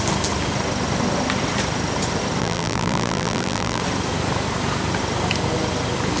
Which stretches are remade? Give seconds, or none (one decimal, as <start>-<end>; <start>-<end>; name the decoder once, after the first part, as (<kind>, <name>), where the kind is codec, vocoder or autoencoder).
2.4-3.8 (vocoder, BigVGAN v2)

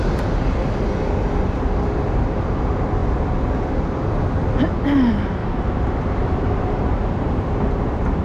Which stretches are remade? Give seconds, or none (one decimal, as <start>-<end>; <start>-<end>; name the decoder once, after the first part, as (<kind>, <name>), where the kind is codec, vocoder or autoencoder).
5.4-6.8 (vocoder, BigVGAN v2)